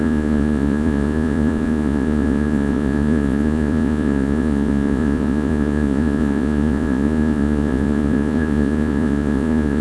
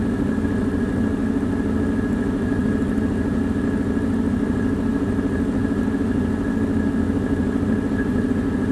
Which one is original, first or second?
second